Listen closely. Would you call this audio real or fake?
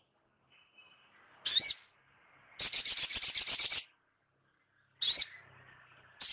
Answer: real